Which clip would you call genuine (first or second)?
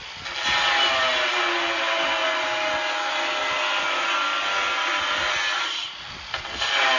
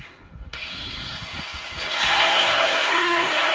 first